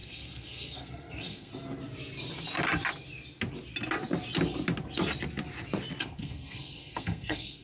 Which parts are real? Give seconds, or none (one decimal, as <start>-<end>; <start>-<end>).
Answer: 1.5-6.0